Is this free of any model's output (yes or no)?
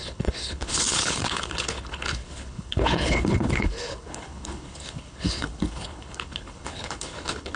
no